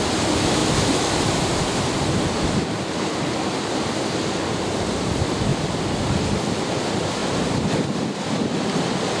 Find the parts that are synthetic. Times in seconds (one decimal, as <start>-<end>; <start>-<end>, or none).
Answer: 0.0-5.5; 6.8-9.2